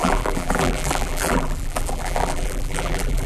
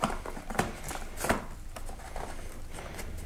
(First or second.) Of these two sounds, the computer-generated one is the first